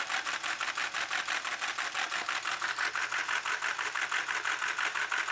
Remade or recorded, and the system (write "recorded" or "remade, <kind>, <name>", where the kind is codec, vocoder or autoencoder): recorded